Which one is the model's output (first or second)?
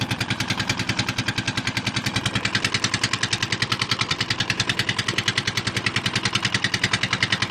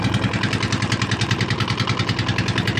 first